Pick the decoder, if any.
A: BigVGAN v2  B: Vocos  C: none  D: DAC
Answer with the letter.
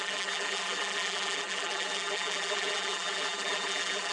A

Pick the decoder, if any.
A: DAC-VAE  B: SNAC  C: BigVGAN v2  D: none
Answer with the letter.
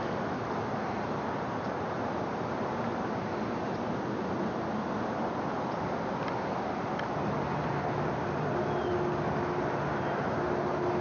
D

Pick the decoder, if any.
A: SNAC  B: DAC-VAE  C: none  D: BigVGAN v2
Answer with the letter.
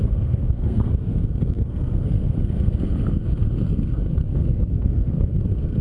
A